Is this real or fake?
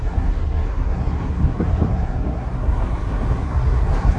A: fake